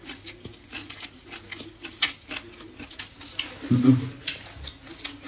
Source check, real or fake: real